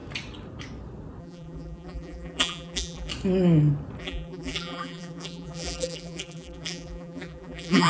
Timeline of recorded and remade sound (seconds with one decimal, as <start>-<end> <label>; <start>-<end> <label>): 0.0-1.2 recorded; 1.2-3.1 remade; 3.1-4.0 recorded; 4.0-7.9 remade